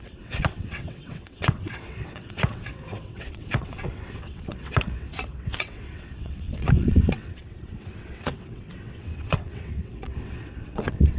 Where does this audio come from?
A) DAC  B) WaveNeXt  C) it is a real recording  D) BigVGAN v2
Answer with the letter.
B